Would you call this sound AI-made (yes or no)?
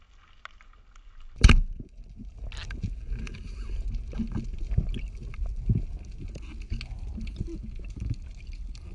no